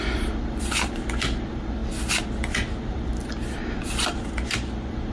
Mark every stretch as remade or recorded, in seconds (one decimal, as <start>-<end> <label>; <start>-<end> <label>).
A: 0.0-1.8 remade; 1.8-2.8 recorded; 2.8-5.1 remade